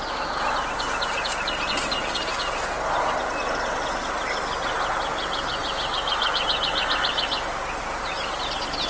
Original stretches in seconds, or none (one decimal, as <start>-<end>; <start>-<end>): 0.0-8.9